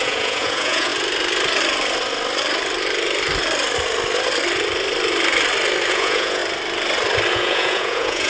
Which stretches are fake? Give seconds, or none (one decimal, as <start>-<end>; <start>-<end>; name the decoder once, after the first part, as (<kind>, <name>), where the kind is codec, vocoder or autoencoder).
0.0-0.9 (vocoder, Vocos); 5.9-6.4; 7.3-8.3